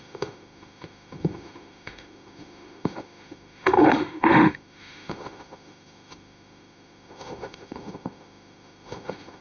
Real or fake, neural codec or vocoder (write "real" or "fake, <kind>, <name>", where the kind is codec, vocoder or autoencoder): fake, autoencoder, DAC-VAE